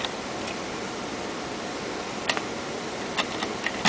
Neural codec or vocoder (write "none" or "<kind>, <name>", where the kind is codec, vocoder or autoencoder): none